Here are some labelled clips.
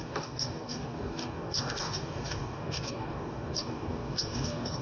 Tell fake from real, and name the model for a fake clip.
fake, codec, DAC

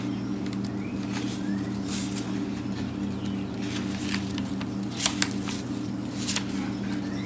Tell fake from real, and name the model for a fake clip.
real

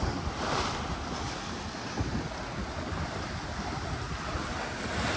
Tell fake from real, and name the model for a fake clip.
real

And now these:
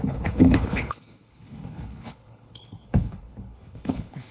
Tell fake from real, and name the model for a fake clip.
fake, codec, HILCodec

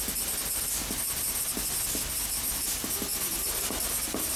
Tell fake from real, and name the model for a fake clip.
real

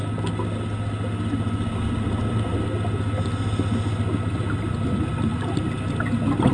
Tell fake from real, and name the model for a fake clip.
real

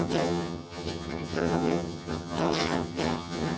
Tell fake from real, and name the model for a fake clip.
fake, vocoder, HiFi-GAN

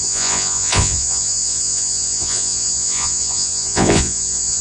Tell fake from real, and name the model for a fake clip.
fake, vocoder, Vocos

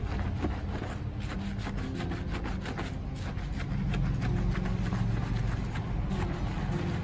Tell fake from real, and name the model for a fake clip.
real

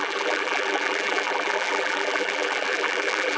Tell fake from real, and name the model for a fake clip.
fake, vocoder, BigVGAN v2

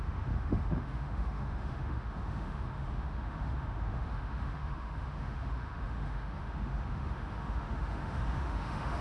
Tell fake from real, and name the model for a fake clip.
fake, autoencoder, DAC-VAE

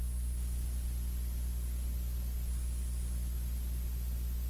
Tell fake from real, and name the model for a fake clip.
real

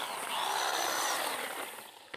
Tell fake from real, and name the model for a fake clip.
real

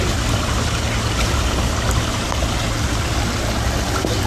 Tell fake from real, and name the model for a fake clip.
real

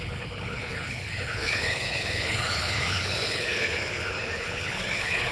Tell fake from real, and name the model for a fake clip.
fake, codec, HILCodec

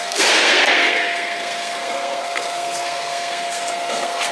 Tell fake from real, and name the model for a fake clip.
fake, codec, SNAC